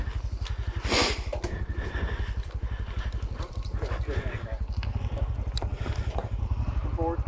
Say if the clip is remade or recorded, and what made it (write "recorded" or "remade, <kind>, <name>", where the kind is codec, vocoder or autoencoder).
recorded